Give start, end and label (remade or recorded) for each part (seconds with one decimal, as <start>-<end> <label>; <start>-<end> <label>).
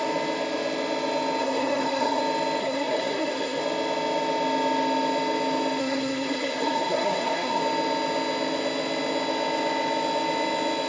0.0-1.4 recorded; 1.4-2.2 remade; 2.2-2.6 recorded; 2.6-3.6 remade; 3.6-5.8 recorded; 5.8-7.6 remade; 7.6-10.9 recorded